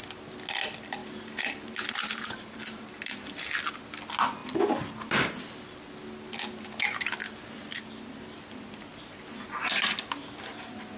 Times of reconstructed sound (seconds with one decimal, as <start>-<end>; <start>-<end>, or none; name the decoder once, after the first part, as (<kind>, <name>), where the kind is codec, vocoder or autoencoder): 1.0-3.4 (vocoder, BigVGAN v2); 4.4-5.5; 8.9-10.6